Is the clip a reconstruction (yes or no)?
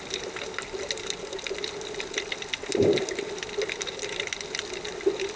no